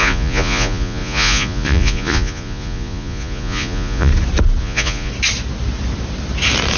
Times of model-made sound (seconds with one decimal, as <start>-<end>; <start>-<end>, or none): 0.0-4.1; 4.6-5.1